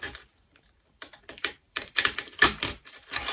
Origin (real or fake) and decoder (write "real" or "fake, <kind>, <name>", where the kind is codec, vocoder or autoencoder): fake, vocoder, BigVGAN v2